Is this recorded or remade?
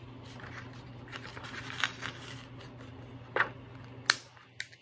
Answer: recorded